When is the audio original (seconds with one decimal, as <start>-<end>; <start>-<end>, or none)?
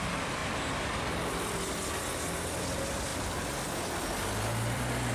0.4-2.6